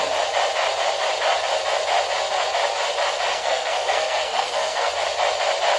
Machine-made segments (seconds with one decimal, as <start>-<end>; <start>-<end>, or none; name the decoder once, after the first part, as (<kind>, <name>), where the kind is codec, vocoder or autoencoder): 3.3-4.9 (codec, SNAC)